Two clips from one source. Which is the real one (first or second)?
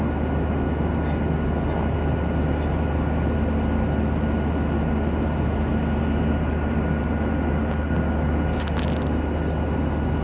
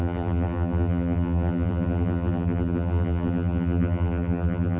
first